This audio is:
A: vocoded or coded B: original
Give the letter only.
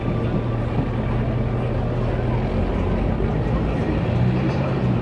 B